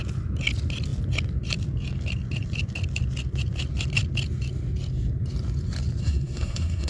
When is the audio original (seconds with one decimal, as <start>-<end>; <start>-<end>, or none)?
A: 0.0-6.0